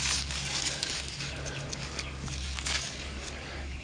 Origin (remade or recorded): remade